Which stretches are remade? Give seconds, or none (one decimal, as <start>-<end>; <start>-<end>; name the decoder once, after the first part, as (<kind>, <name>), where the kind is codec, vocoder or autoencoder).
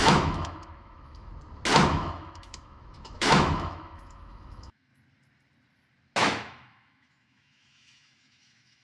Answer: 0.0-1.3 (autoencoder, DAC-VAE); 1.9-4.9; 6.2-8.8